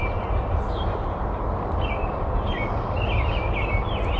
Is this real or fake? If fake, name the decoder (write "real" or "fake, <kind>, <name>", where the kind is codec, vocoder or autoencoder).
real